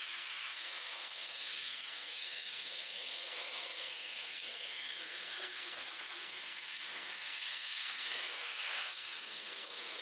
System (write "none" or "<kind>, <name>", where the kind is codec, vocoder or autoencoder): codec, SNAC